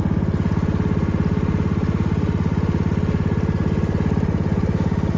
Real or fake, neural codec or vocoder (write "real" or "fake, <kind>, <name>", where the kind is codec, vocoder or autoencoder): real